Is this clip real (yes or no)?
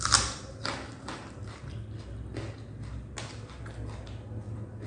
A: yes